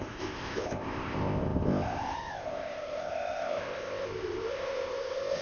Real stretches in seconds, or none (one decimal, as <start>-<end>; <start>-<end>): none